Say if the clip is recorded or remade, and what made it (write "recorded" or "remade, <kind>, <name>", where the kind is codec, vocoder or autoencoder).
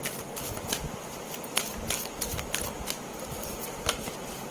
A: recorded